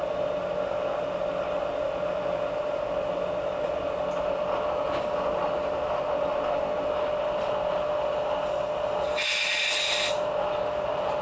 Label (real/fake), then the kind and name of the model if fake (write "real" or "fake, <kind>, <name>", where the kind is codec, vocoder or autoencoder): real